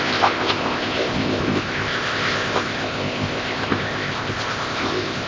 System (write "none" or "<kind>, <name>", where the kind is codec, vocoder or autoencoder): codec, ZipCodec